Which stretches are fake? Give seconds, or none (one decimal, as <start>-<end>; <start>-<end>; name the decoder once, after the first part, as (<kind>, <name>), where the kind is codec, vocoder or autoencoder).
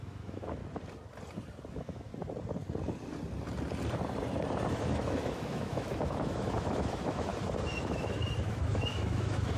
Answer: 0.0-0.6 (autoencoder, DAC-VAE); 1.7-2.1; 4.7-7.3; 7.8-9.6